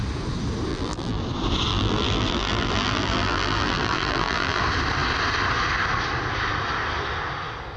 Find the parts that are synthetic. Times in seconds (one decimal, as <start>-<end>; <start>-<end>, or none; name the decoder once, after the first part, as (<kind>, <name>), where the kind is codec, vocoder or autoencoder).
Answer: 0.7-1.2 (vocoder, BigVGAN v2); 1.7-4.6